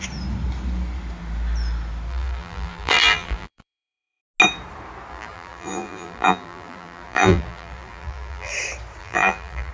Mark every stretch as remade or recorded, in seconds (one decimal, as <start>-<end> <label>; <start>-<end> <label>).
0.0-2.1 recorded; 2.1-4.2 remade; 4.2-5.1 recorded; 5.1-8.5 remade; 8.5-9.0 recorded; 9.0-9.7 remade